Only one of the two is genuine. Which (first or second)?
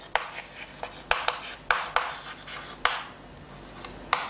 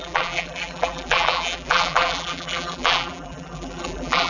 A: first